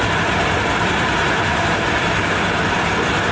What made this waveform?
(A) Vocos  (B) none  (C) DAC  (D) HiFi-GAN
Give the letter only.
B